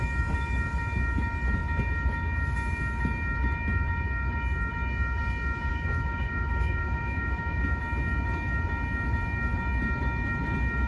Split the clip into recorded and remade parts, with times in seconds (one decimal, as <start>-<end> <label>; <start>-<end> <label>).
0.0-5.7 recorded; 5.7-7.8 remade; 7.8-10.9 recorded